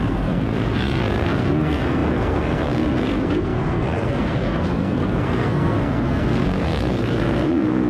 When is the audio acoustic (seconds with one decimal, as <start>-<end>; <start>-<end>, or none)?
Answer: none